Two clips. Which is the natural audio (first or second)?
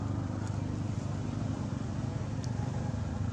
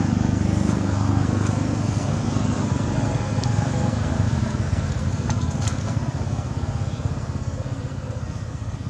first